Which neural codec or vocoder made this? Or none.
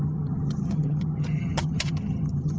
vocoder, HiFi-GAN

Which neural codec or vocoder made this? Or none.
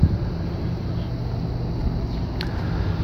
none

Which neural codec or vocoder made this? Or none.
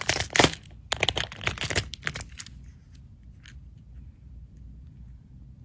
none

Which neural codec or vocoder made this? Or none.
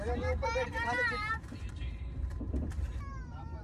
vocoder, BigVGAN v2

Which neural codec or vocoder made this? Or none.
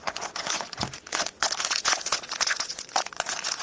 vocoder, Vocos